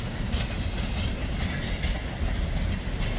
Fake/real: real